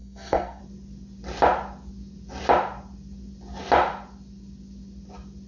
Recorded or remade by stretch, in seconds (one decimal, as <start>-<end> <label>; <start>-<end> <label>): 0.0-0.6 remade; 0.6-5.5 recorded